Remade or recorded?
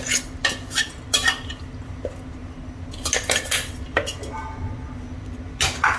recorded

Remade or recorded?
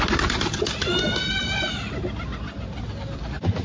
recorded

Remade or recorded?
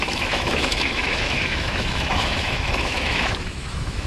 remade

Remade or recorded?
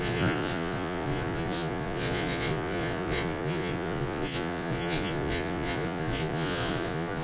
remade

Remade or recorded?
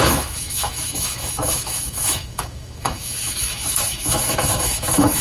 remade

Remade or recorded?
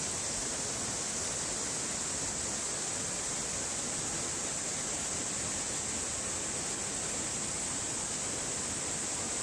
recorded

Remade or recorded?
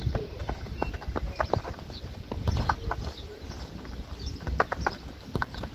recorded